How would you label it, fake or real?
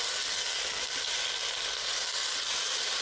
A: real